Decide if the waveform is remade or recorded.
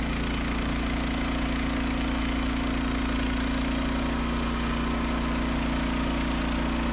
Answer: recorded